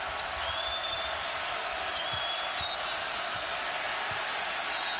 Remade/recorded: recorded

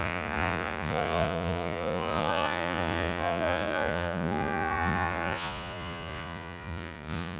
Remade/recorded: remade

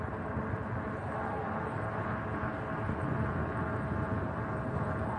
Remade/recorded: recorded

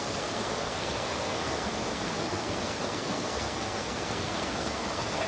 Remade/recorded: remade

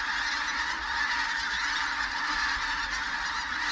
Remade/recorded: recorded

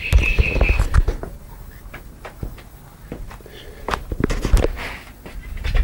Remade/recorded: recorded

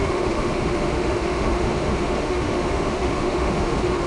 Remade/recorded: remade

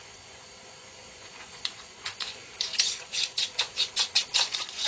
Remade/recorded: remade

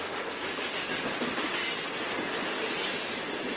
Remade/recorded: recorded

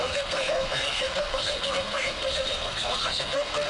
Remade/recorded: remade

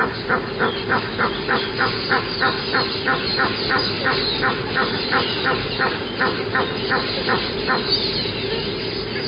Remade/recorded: recorded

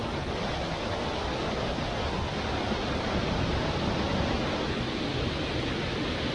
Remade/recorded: recorded